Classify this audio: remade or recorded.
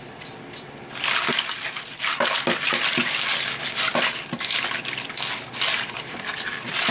recorded